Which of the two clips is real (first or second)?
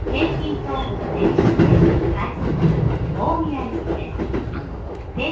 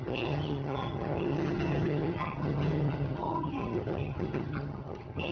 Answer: first